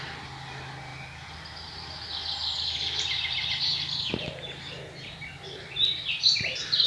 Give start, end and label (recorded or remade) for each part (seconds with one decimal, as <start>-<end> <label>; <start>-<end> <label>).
0.0-6.9 recorded